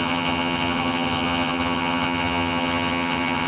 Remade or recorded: remade